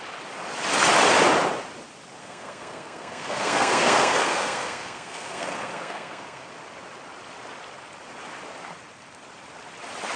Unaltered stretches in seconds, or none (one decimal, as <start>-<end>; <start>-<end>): 0.0-2.2; 6.5-10.2